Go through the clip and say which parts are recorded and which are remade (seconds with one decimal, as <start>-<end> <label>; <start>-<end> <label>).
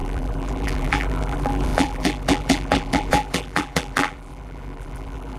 0.0-5.4 remade